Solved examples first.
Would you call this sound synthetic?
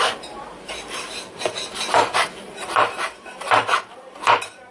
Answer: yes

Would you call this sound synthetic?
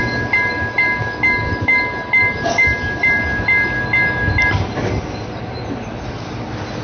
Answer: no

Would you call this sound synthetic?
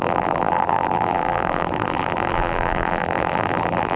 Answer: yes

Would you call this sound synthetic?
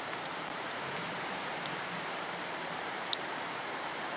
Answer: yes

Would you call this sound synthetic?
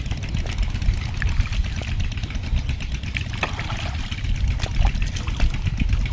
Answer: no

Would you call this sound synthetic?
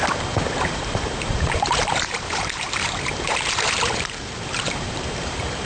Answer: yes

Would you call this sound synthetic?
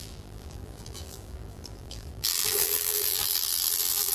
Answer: yes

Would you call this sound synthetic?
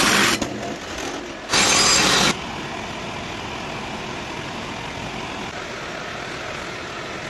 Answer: no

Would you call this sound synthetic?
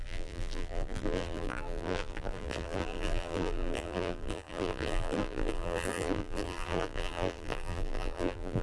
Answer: yes